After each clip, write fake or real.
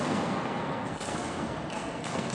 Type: fake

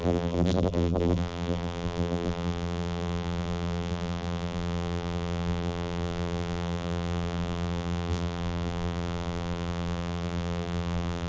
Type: fake